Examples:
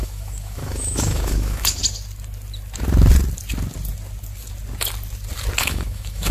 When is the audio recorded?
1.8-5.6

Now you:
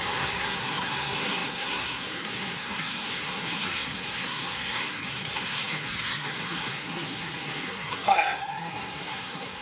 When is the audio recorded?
none

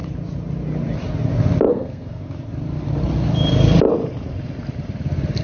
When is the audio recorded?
0.0-1.7; 2.2-5.4

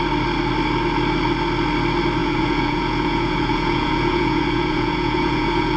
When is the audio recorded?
0.0-2.2

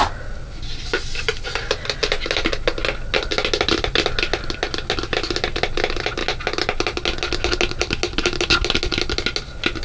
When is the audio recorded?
0.0-9.8

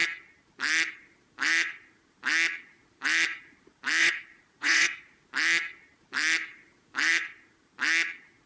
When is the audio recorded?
0.0-4.0; 5.2-8.5

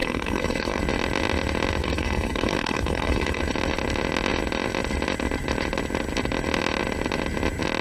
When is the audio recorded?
0.8-1.8; 3.4-7.8

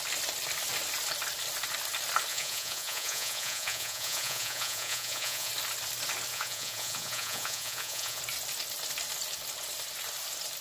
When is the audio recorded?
0.0-2.3; 5.5-6.3; 8.2-10.6